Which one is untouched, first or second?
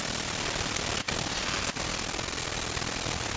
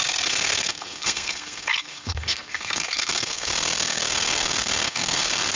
first